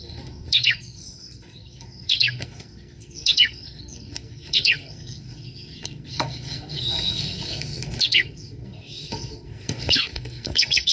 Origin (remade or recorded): remade